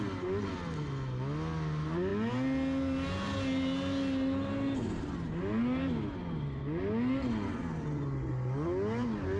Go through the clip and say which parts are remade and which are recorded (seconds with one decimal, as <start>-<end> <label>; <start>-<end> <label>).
0.0-9.4 recorded